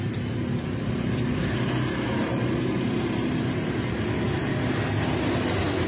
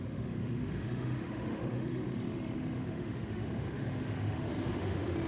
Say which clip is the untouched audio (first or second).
first